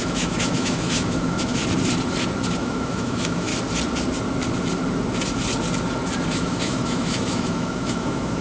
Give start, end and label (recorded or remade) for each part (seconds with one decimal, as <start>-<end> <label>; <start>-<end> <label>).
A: 0.0-1.6 remade; 1.6-2.6 recorded; 2.6-3.5 remade; 3.5-6.3 recorded; 6.3-8.4 remade

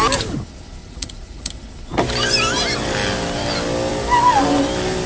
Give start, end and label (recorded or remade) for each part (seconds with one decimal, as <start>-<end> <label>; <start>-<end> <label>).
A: 0.0-0.8 recorded; 0.8-1.5 remade; 1.5-5.1 recorded

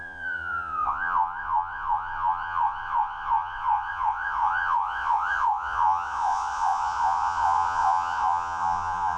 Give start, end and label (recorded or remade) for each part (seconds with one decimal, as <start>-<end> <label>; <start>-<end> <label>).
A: 0.0-9.2 remade

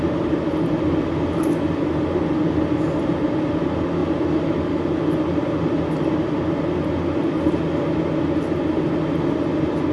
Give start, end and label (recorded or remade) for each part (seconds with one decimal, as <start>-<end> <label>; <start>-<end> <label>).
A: 0.0-9.9 recorded